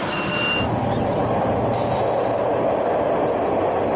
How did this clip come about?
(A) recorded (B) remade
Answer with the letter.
A